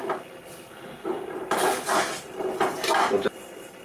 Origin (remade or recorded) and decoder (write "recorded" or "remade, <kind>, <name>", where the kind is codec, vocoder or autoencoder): recorded